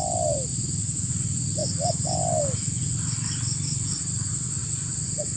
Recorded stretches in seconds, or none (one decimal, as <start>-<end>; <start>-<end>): 0.0-0.5; 1.1-4.6